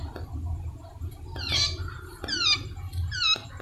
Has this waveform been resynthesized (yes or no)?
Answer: yes